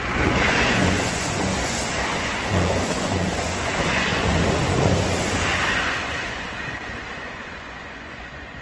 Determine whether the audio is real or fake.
fake